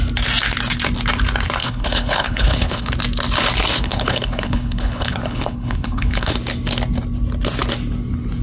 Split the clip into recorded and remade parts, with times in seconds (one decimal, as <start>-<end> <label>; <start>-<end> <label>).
0.0-1.6 recorded; 1.6-2.9 remade; 2.9-3.7 recorded; 3.7-6.3 remade; 6.3-8.4 recorded